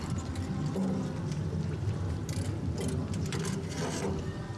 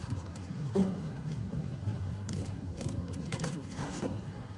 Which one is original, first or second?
first